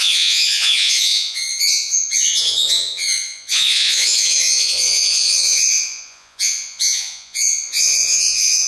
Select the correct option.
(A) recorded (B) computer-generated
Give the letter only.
B